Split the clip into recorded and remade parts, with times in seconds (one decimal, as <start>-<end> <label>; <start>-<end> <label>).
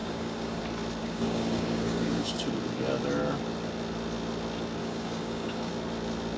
0.0-0.6 remade; 0.6-1.0 recorded; 1.0-2.4 remade; 2.4-4.8 recorded; 4.8-5.7 remade; 5.7-6.4 recorded